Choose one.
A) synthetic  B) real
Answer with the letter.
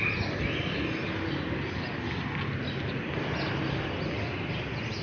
B